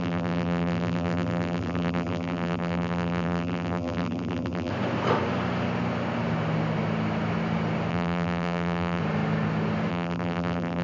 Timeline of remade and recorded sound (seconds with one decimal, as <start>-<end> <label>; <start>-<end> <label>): 0.0-4.7 remade; 4.7-7.9 recorded; 7.9-9.0 remade; 9.0-9.9 recorded; 9.9-10.8 remade